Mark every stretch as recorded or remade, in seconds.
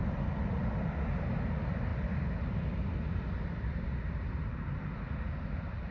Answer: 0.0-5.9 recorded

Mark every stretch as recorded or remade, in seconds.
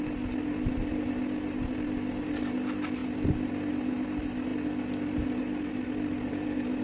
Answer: 0.0-6.8 recorded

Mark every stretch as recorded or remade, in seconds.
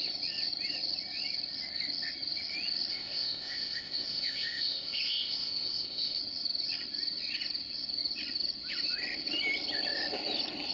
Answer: 0.0-2.9 recorded; 2.9-6.2 remade; 6.2-10.7 recorded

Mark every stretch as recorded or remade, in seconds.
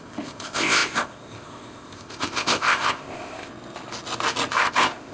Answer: 0.0-3.5 remade; 3.5-4.6 recorded; 4.6-5.1 remade